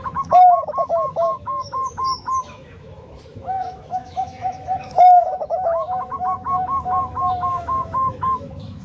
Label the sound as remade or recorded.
remade